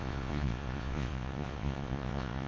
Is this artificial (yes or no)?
yes